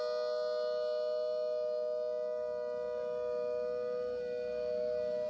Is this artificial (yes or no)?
no